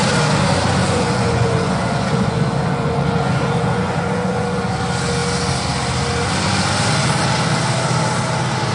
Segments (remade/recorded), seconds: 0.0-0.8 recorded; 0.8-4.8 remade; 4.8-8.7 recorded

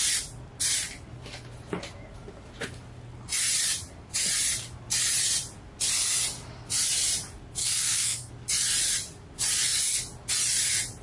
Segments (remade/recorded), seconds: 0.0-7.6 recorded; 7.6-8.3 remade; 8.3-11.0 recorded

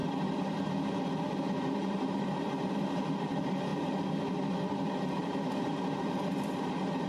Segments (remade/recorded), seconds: 0.0-3.7 remade; 3.7-4.3 recorded; 4.3-7.1 remade